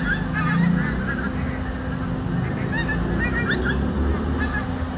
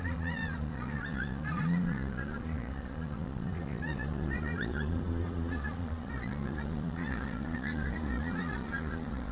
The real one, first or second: first